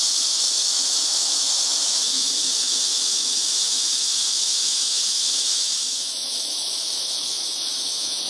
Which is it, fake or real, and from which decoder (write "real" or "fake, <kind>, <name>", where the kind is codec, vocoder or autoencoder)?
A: fake, autoencoder, DAC-VAE